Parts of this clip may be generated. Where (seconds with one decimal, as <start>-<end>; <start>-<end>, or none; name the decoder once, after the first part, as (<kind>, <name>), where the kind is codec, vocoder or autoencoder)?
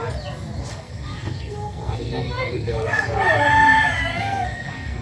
0.7-3.2 (codec, SNAC); 4.1-5.0